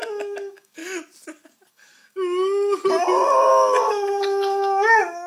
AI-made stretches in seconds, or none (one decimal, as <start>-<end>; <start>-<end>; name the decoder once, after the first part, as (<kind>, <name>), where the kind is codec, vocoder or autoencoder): 0.0-0.8 (codec, DAC); 1.7-2.8; 3.5-5.3